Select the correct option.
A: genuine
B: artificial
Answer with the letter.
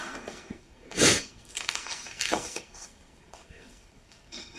B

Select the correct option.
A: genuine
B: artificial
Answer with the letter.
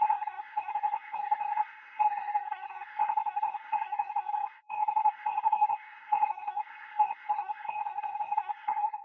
B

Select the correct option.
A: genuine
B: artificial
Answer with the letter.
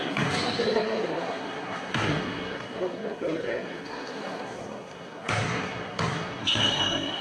B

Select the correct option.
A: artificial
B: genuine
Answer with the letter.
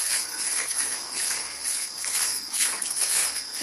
A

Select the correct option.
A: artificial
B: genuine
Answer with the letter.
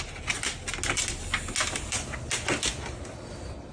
B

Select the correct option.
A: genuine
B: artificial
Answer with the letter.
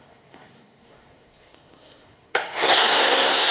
B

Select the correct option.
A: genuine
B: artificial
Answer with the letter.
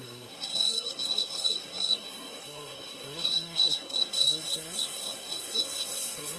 B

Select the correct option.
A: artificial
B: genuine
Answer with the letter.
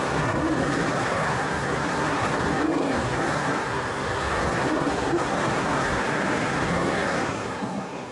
A